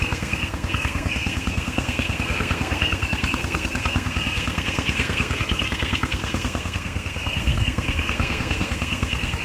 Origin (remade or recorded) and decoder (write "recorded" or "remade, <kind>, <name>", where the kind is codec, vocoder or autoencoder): remade, codec, SNAC